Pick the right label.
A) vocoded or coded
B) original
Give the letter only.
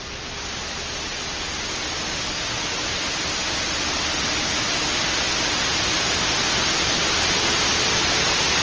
B